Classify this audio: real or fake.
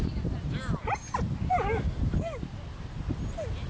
real